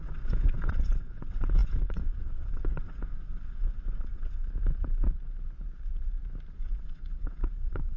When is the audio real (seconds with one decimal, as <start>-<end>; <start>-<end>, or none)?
4.4-6.5